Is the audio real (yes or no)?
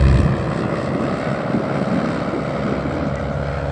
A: yes